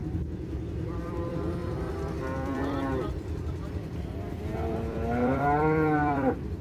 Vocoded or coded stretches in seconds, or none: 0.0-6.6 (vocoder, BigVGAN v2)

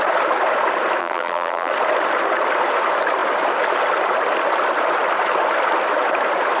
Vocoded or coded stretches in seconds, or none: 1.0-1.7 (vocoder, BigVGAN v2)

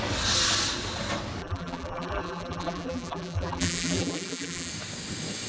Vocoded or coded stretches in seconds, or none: 1.4-4.7 (vocoder, BigVGAN v2)

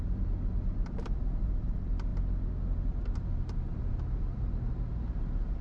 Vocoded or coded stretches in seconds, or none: 0.0-2.1 (vocoder, BigVGAN v2)

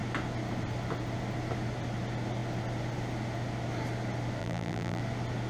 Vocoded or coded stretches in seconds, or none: 4.4-5.0 (vocoder, BigVGAN v2)

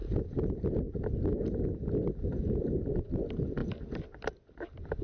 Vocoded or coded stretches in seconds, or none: 0.0-3.0 (vocoder, BigVGAN v2)